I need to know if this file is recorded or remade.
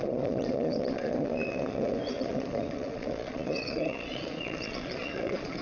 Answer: remade